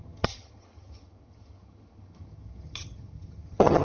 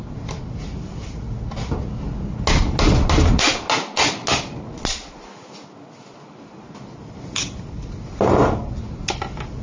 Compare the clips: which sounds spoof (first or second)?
first